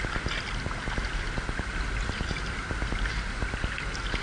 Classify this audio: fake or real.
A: real